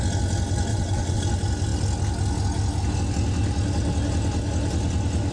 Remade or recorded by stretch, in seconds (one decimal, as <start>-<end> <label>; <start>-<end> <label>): 0.0-0.7 recorded; 0.7-1.2 remade; 1.2-5.3 recorded